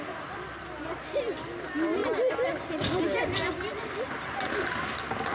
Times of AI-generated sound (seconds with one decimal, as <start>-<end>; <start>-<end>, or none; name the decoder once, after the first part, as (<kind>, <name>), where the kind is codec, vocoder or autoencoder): none